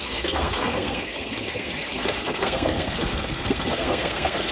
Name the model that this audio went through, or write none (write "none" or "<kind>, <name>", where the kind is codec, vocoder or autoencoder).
codec, SNAC